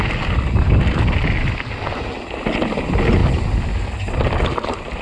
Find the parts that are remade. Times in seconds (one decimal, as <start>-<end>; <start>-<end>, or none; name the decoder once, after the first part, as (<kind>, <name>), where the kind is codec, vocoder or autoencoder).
none